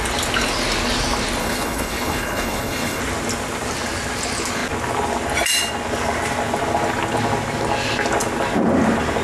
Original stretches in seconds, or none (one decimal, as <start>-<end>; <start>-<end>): 0.0-1.4; 3.0-9.2